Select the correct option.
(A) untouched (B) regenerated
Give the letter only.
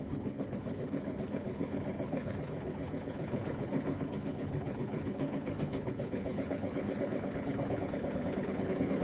B